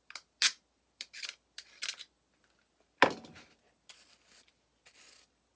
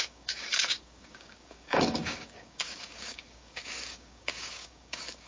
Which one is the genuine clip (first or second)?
first